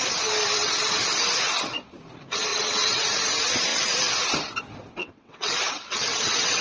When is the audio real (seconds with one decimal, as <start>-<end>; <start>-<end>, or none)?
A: 0.0-2.5; 3.0-5.0